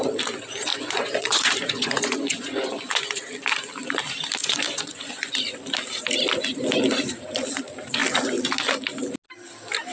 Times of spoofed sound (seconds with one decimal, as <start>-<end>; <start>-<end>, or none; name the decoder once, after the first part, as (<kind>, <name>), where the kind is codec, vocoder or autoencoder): 0.7-3.1 (vocoder, Vocos); 4.4-5.3